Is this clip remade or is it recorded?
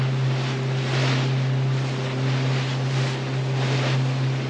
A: recorded